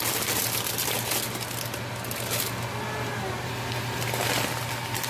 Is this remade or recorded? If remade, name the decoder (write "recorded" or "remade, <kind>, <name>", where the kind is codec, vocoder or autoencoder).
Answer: recorded